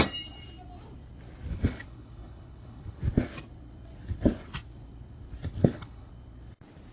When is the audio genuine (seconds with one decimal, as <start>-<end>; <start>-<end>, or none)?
0.0-1.5; 3.0-5.6; 6.1-6.9

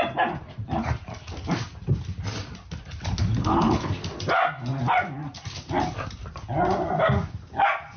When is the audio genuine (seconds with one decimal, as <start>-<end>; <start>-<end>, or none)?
0.0-3.3; 3.9-8.0